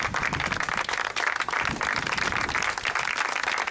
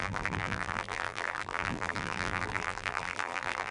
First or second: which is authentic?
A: first